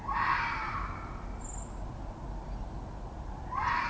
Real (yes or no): yes